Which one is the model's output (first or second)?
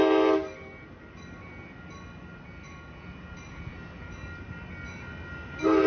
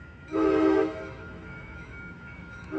second